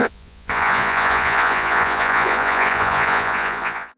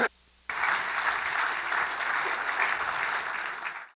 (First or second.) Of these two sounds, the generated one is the first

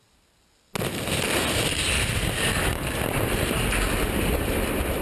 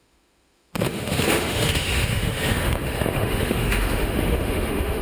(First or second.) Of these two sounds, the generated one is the second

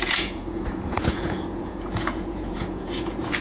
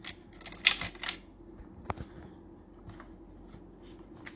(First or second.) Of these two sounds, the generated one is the first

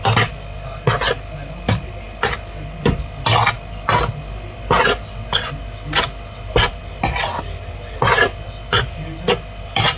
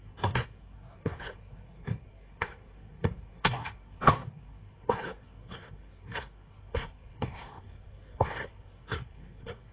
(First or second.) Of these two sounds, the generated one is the second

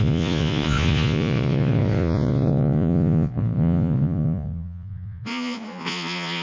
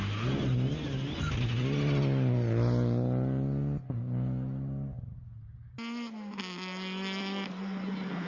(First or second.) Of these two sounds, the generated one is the first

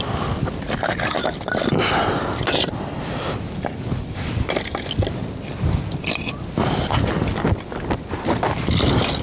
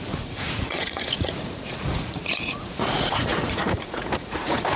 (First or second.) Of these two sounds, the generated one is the second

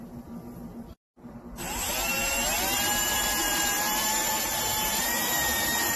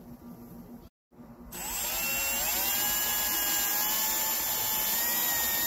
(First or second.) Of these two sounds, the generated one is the first